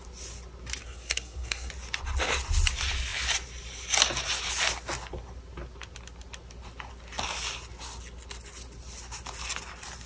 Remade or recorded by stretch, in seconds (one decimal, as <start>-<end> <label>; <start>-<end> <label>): 0.0-0.8 recorded; 0.8-1.7 remade; 1.7-10.1 recorded